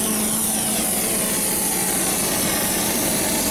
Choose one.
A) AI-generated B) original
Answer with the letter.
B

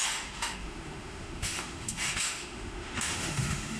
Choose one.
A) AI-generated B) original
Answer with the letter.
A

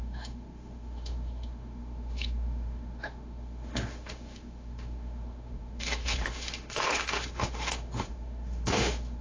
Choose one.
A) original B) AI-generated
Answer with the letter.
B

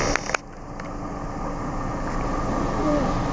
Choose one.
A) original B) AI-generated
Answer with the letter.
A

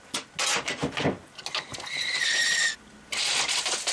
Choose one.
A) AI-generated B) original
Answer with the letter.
B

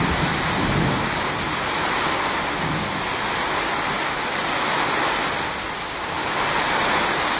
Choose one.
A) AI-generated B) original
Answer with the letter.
B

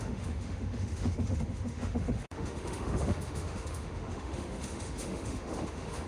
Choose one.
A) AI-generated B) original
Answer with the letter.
A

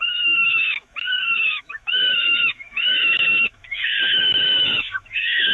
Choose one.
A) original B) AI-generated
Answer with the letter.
B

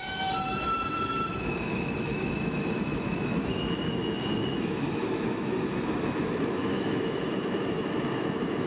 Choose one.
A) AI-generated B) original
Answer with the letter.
A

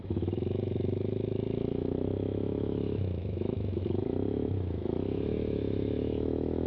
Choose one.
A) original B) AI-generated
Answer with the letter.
B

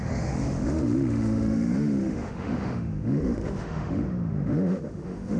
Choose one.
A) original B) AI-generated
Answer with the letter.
B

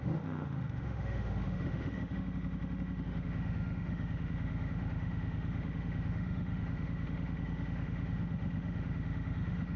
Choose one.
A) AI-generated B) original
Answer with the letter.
A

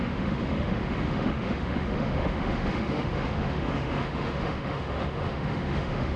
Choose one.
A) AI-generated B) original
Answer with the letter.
A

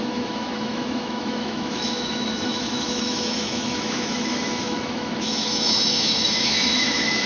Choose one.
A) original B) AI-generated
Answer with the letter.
B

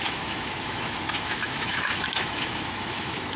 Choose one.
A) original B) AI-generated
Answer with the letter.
B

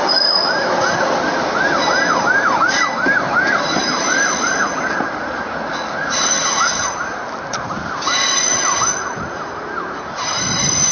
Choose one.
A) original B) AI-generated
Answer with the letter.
A